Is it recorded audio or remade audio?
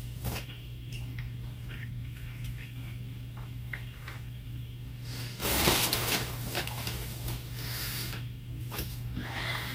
remade